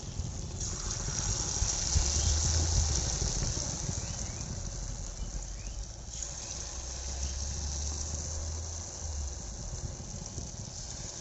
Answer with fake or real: real